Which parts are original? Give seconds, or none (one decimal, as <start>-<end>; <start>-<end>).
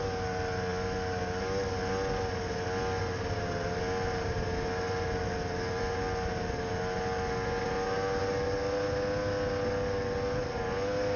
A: 0.0-11.2